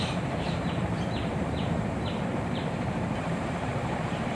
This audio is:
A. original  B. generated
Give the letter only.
B